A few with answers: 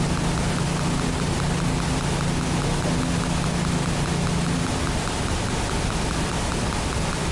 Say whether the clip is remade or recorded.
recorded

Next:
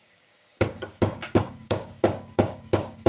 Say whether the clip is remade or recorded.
remade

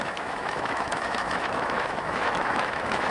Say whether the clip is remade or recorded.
remade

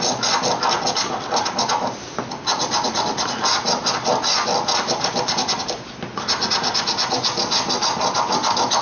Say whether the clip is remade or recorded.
recorded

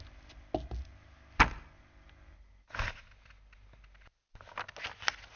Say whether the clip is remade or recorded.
recorded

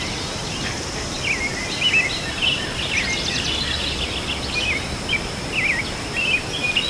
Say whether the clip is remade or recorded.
recorded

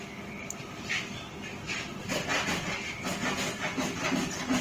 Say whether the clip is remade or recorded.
recorded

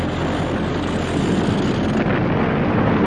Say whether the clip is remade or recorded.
recorded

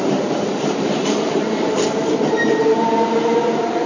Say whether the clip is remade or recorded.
remade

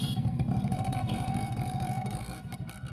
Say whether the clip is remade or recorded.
remade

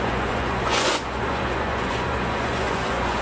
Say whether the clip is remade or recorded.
remade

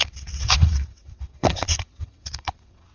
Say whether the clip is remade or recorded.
remade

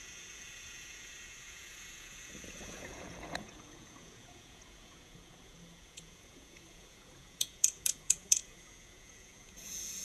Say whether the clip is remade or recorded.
remade